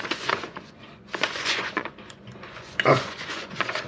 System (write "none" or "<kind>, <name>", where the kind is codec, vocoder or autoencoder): vocoder, Vocos